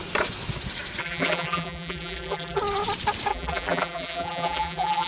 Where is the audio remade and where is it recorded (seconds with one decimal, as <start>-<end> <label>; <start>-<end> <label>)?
0.0-1.0 recorded; 1.0-2.6 remade; 2.6-3.3 recorded; 3.3-5.1 remade